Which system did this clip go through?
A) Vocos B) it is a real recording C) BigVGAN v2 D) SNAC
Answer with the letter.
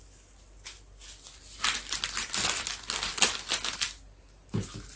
B